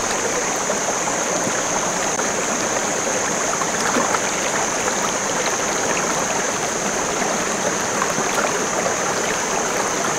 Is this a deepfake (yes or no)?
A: yes